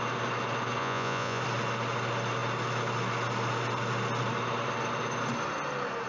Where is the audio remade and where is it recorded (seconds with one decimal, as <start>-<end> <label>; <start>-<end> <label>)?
0.0-0.8 recorded; 0.8-1.4 remade; 1.4-6.1 recorded